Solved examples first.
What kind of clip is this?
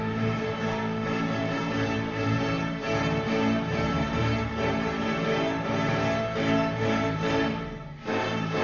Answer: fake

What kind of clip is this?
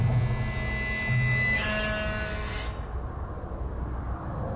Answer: real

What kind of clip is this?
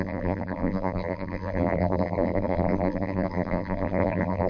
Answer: fake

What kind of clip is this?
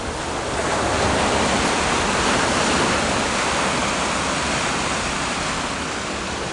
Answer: real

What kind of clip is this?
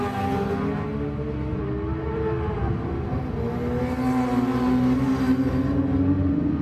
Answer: real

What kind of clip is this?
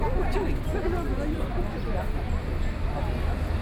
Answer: real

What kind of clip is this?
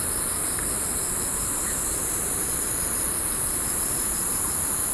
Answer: fake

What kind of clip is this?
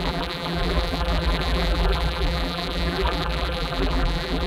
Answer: fake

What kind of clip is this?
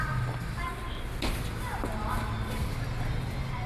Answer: real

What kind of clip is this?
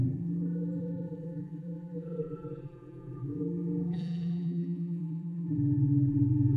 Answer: fake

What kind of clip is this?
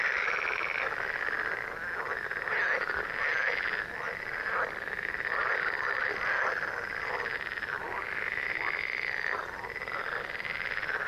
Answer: real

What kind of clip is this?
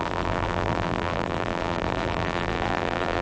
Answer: fake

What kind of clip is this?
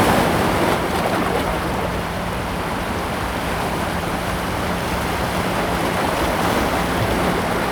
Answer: fake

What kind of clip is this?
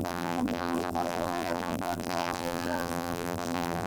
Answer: fake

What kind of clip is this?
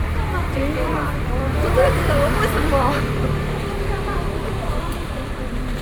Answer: fake